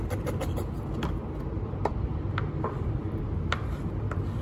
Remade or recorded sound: recorded